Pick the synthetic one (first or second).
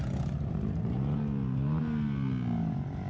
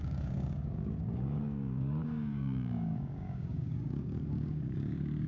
second